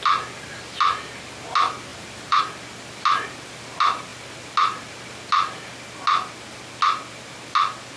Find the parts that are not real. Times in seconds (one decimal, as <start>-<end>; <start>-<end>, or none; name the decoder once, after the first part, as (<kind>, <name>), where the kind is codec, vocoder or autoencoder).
1.9-2.4 (vocoder, BigVGAN v2)